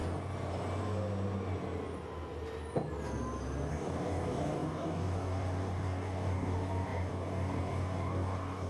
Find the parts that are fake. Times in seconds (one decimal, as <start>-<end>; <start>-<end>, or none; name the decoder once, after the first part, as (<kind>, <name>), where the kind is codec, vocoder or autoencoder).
3.7-8.7 (codec, DAC)